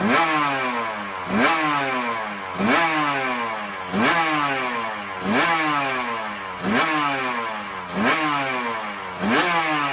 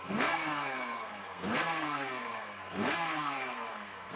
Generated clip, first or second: second